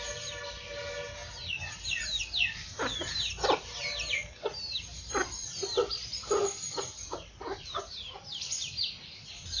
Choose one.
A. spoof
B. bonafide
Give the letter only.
B